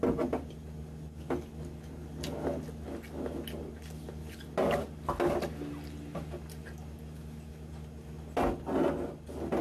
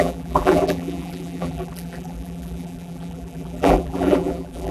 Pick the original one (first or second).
first